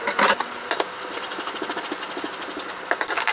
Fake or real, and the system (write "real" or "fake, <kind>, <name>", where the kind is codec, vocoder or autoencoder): real